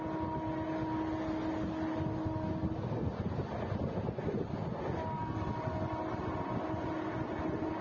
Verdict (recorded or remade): recorded